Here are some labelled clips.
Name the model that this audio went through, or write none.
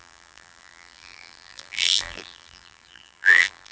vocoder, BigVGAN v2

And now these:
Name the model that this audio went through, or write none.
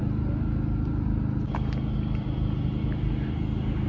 none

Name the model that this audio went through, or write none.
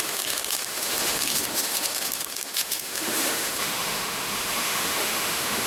autoencoder, DAC-VAE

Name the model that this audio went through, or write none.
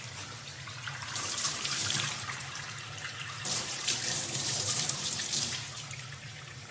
vocoder, BigVGAN v2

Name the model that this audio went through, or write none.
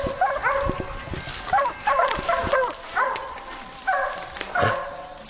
none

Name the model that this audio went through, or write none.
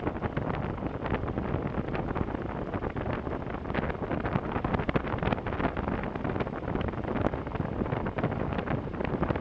none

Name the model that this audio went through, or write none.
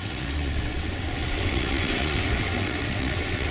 vocoder, WaveNeXt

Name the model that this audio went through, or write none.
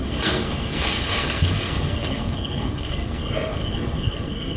codec, SNAC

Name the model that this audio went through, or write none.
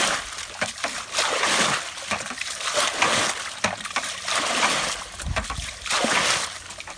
none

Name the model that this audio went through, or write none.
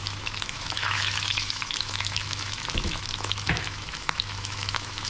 autoencoder, DAC-VAE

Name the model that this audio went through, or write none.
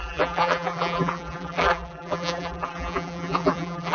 vocoder, BigVGAN v2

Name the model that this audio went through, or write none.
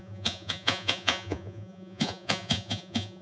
vocoder, Vocos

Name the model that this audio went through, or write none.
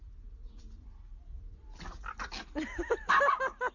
none